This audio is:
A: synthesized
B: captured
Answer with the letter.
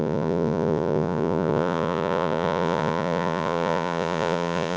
A